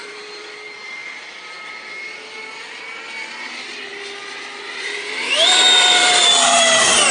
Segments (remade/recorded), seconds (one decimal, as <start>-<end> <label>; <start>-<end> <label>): 0.0-1.0 remade; 1.0-3.4 recorded; 3.4-3.9 remade; 3.9-4.6 recorded; 4.6-7.1 remade